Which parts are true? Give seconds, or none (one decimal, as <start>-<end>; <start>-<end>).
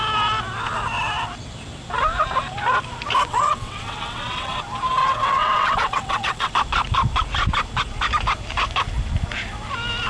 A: 0.0-3.3; 4.6-5.0; 6.5-10.1